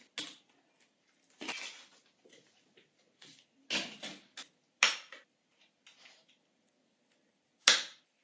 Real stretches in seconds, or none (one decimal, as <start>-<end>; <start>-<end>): 0.0-8.2